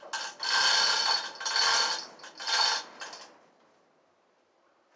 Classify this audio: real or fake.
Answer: real